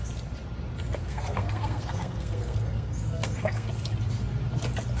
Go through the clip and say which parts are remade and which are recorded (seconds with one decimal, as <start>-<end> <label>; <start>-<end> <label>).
0.0-1.0 recorded; 1.0-3.7 remade; 3.7-5.0 recorded